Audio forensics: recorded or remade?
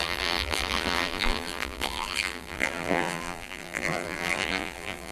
remade